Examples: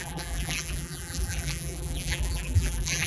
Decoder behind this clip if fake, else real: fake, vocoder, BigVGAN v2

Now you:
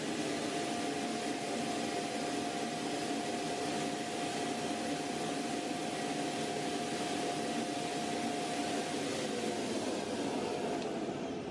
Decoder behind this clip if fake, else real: real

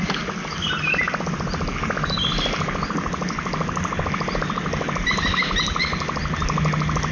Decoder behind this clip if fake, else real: real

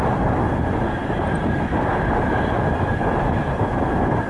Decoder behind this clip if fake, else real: real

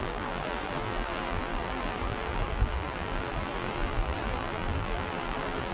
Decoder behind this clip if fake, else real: fake, vocoder, BigVGAN v2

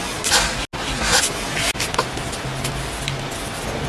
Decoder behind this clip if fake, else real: real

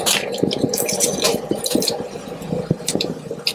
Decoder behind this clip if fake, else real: fake, vocoder, BigVGAN v2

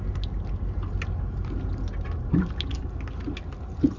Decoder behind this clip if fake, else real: real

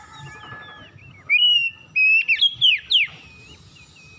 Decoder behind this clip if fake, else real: real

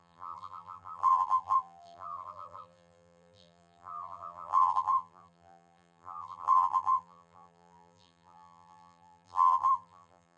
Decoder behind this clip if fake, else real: fake, vocoder, BigVGAN v2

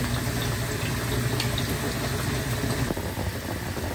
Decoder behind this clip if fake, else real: real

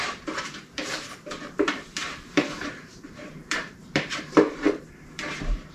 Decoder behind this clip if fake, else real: fake, vocoder, BigVGAN v2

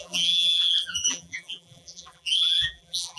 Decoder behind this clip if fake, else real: fake, vocoder, BigVGAN v2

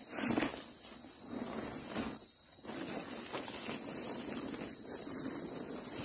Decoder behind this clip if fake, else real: real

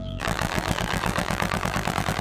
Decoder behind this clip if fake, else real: fake, vocoder, BigVGAN v2